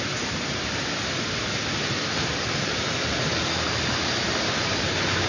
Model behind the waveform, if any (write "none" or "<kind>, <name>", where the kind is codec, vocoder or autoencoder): none